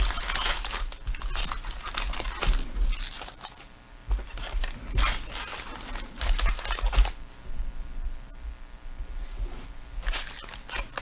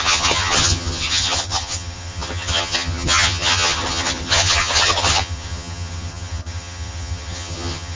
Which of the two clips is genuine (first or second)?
first